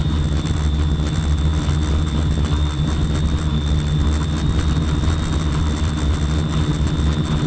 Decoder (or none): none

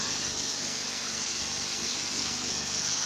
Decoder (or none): codec, SNAC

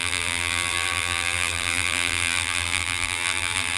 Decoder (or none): vocoder, BigVGAN v2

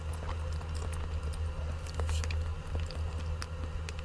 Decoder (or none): none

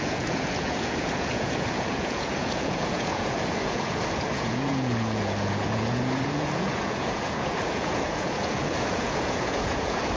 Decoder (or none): vocoder, Vocos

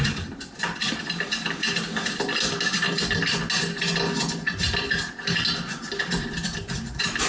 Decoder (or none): none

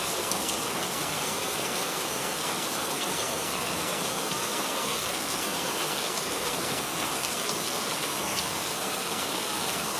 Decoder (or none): codec, SNAC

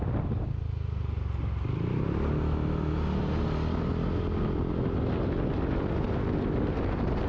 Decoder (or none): none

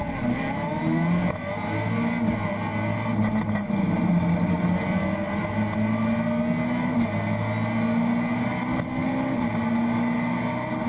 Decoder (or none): none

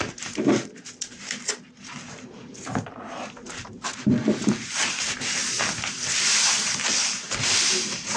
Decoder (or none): vocoder, BigVGAN v2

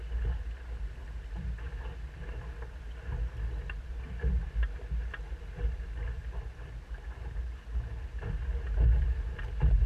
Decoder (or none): none